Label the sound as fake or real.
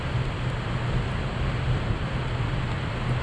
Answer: real